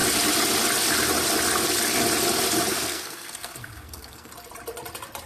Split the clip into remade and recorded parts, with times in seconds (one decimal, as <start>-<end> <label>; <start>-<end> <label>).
0.0-2.7 recorded; 2.7-4.3 remade; 4.3-5.3 recorded